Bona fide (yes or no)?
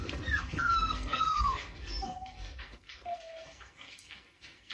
no